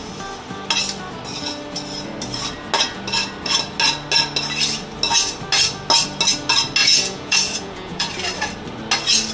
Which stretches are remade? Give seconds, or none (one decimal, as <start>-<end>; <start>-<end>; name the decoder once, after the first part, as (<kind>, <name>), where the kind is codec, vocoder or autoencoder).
6.8-8.1 (vocoder, Vocos)